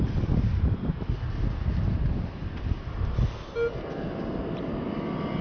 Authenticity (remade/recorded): recorded